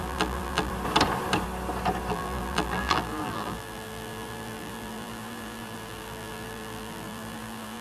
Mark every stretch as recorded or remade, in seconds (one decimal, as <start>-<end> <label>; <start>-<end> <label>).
0.0-0.7 remade; 0.7-2.1 recorded; 2.1-7.8 remade